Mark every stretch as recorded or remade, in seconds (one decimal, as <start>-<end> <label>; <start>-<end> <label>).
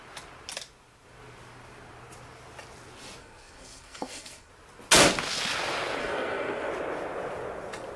0.0-3.2 recorded; 3.2-4.5 remade; 4.5-6.0 recorded; 6.0-6.7 remade; 6.7-8.0 recorded